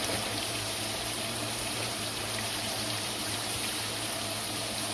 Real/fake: fake